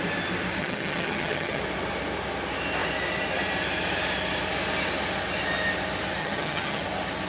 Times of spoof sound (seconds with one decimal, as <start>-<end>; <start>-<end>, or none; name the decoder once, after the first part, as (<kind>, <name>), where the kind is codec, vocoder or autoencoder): 0.6-1.6 (vocoder, HiFi-GAN); 6.2-6.8